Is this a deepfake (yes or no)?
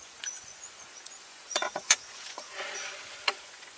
yes